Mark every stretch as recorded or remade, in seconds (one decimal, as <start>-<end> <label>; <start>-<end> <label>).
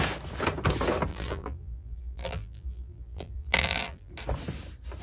0.0-1.1 recorded; 1.1-4.1 remade; 4.1-5.0 recorded